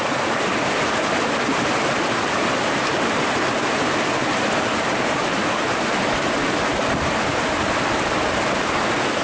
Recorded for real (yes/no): yes